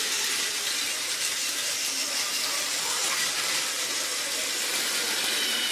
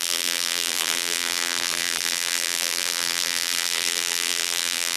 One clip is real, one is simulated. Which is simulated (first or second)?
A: second